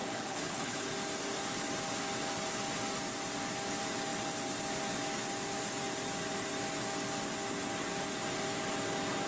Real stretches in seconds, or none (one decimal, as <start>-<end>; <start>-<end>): 0.9-9.3